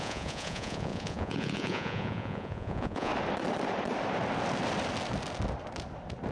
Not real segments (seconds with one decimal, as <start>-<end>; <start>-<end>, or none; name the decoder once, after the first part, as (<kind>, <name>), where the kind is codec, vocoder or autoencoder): 0.0-3.1 (vocoder, Vocos)